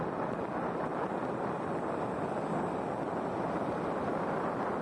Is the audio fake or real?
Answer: real